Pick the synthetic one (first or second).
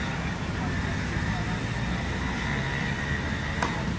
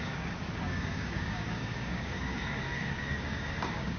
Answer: second